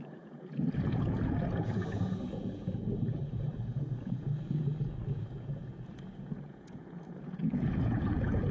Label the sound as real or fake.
fake